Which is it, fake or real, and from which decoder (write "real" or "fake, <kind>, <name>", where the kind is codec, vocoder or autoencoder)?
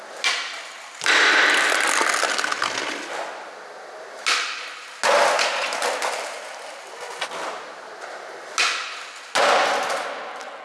real